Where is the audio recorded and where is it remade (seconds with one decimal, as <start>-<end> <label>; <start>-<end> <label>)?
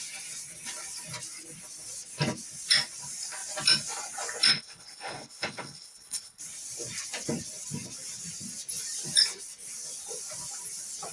0.0-4.5 recorded; 4.5-6.4 remade; 6.4-11.1 recorded